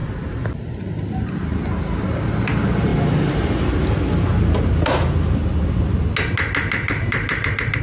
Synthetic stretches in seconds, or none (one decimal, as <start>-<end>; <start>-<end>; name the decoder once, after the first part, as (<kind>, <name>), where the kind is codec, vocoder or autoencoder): 0.0-0.8 (vocoder, BigVGAN v2)